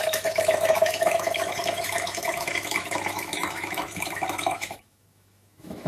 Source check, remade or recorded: remade